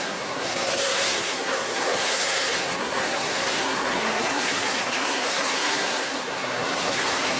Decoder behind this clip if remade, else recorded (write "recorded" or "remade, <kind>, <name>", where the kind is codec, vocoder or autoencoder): remade, codec, SNAC